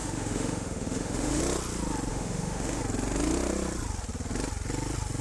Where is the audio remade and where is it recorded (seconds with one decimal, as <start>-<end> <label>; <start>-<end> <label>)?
0.0-1.4 remade; 1.4-2.1 recorded; 2.1-2.8 remade; 2.8-5.2 recorded